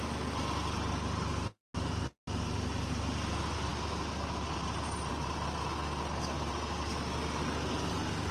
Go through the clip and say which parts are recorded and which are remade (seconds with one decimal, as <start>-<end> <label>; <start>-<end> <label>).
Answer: 0.0-8.3 recorded